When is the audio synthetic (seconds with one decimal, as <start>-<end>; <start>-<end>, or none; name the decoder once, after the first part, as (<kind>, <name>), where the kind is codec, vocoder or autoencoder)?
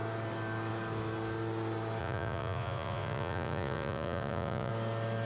2.0-4.7 (vocoder, Vocos)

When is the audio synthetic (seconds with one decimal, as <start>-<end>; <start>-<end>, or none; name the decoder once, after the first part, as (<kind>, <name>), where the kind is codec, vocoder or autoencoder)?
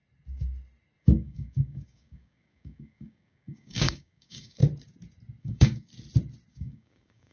1.0-4.6 (codec, DAC); 5.4-5.9; 6.5-7.3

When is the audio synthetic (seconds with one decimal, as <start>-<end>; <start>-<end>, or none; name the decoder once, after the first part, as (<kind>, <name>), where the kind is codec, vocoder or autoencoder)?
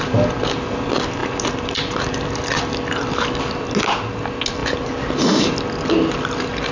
none